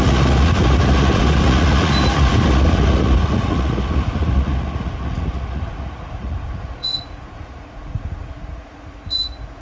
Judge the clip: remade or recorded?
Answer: remade